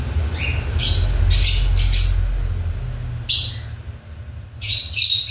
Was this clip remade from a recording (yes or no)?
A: no